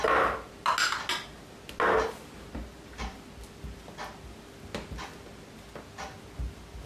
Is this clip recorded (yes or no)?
yes